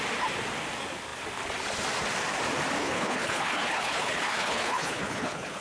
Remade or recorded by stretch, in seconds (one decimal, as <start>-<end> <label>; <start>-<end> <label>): 0.0-2.8 recorded; 2.8-5.6 remade